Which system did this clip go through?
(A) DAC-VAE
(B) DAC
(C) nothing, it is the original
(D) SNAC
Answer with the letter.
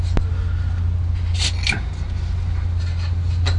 C